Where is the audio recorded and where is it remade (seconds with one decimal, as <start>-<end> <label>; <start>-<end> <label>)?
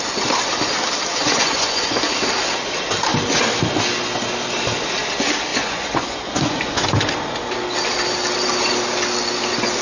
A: 0.0-1.1 recorded; 1.1-2.0 remade; 2.0-5.5 recorded; 5.5-6.8 remade; 6.8-9.8 recorded